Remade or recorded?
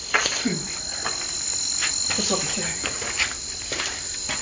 remade